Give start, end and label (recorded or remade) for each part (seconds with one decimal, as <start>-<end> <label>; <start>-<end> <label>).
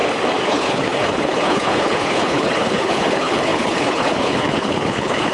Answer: 0.0-0.5 recorded; 0.5-5.3 remade